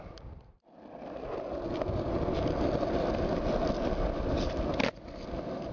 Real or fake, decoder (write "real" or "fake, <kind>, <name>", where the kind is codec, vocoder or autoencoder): real